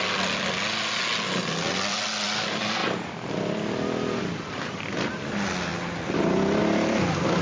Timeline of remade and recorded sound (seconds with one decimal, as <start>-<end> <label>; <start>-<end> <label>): 0.0-1.0 remade; 1.0-1.7 recorded; 1.7-5.7 remade; 5.7-6.6 recorded; 6.6-7.4 remade